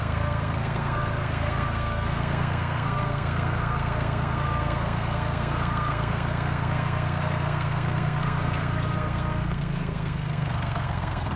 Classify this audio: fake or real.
fake